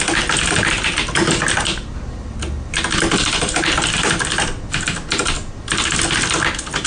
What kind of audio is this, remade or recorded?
recorded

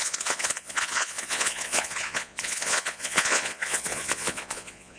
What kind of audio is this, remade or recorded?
remade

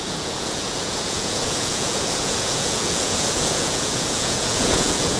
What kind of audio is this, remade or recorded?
remade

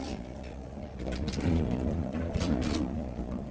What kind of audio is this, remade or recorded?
remade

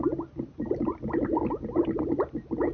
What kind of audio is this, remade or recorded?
recorded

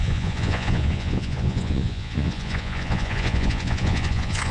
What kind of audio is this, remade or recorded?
remade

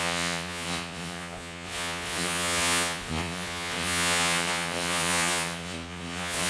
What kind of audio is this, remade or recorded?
remade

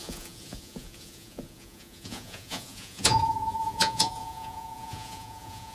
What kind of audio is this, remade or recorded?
remade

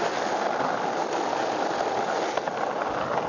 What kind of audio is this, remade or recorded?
recorded